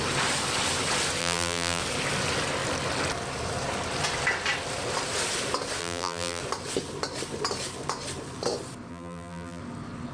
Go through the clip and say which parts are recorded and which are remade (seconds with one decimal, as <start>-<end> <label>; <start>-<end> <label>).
0.0-1.2 recorded; 1.2-1.8 remade; 1.8-5.8 recorded; 5.8-6.4 remade; 6.4-8.9 recorded; 8.9-9.6 remade; 9.6-10.1 recorded